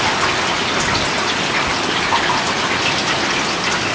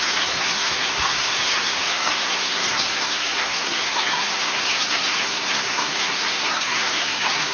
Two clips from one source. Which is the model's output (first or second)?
second